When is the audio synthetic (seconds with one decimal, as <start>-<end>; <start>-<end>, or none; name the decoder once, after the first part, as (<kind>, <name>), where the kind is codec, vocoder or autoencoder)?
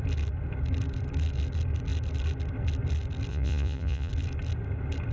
3.3-4.1 (vocoder, Vocos)